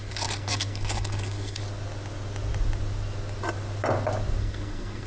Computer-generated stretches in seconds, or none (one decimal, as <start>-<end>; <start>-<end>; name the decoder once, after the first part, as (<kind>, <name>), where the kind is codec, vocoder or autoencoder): 0.0-1.6 (codec, SNAC); 4.4-5.1